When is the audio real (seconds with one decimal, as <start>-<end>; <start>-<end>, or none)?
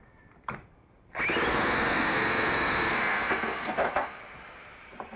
0.0-1.5; 4.2-5.2